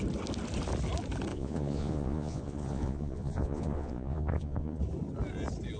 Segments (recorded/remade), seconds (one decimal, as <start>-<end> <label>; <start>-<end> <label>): 0.0-1.3 recorded; 1.3-4.8 remade; 4.8-5.8 recorded